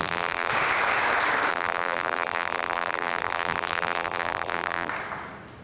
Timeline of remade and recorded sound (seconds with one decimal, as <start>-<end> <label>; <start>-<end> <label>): 0.0-0.5 remade; 0.5-1.5 recorded; 1.5-4.9 remade; 4.9-5.6 recorded